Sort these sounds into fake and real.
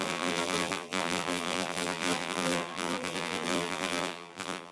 fake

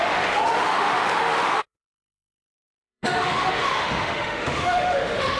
fake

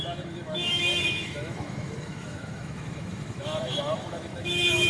fake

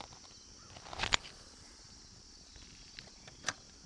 real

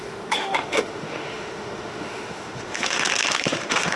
fake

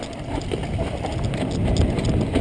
real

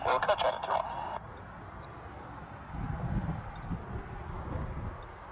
real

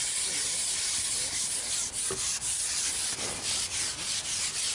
real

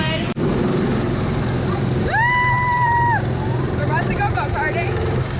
fake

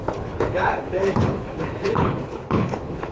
fake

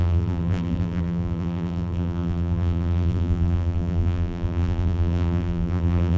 fake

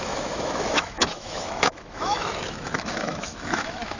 fake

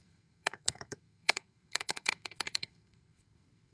fake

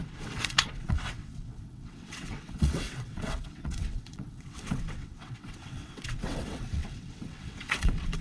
fake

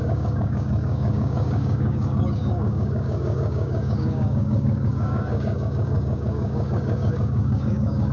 fake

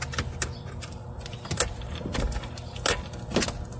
real